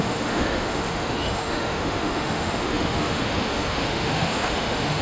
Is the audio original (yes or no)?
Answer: no